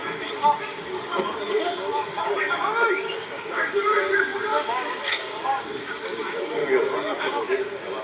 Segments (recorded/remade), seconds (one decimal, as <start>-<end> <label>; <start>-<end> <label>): 0.0-6.6 remade; 6.6-7.2 recorded; 7.2-8.0 remade